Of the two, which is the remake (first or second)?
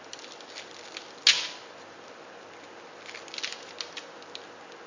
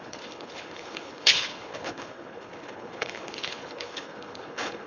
second